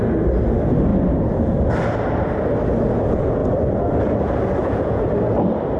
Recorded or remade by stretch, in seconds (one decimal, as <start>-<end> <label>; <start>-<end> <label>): 0.0-4.6 recorded; 4.6-5.1 remade; 5.1-5.8 recorded